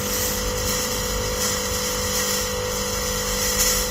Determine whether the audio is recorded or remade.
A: recorded